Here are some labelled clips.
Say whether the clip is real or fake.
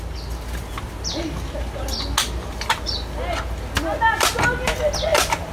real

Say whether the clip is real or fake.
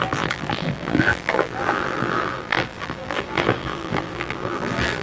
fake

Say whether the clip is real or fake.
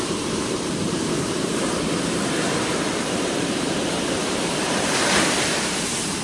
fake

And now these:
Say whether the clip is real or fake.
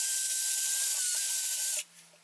real